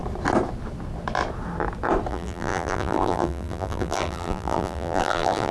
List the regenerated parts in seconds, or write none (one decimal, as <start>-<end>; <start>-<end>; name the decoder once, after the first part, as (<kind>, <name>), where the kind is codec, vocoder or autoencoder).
2.1-5.5 (vocoder, BigVGAN v2)